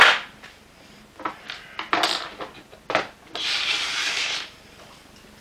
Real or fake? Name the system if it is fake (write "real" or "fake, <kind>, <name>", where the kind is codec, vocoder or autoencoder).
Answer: real